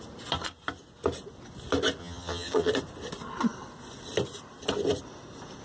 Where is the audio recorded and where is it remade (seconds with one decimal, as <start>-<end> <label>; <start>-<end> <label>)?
0.0-2.0 recorded; 2.0-2.7 remade; 2.7-5.6 recorded